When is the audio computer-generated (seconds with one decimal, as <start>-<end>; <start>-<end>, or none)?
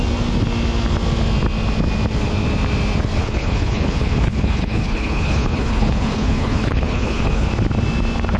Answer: 3.2-7.5